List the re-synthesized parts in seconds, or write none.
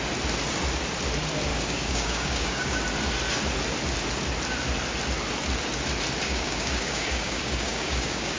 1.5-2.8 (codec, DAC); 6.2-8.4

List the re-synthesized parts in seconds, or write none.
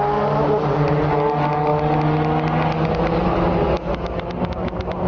none